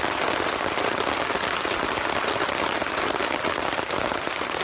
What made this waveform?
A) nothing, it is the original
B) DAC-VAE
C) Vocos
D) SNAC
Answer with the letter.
A